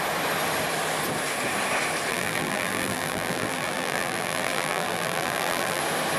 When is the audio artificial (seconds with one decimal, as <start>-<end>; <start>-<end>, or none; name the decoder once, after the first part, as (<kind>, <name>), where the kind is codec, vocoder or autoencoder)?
2.1-5.8 (vocoder, BigVGAN v2)